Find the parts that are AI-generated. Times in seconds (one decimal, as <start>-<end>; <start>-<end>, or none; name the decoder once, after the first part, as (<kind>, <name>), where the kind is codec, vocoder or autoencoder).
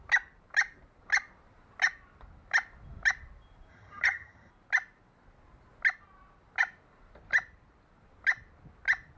3.7-4.5 (vocoder, HiFi-GAN)